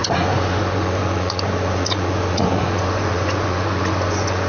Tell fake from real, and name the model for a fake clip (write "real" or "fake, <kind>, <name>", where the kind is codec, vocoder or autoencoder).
fake, vocoder, Vocos